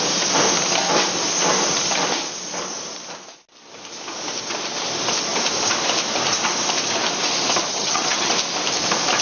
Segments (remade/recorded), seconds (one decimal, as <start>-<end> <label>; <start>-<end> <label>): 0.0-7.7 recorded; 7.7-8.3 remade; 8.3-9.2 recorded